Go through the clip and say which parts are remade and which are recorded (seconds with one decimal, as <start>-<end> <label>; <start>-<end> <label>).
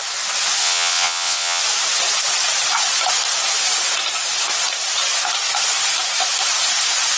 0.0-0.6 recorded; 0.6-1.6 remade; 1.6-7.2 recorded